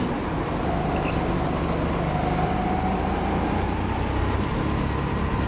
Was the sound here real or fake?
real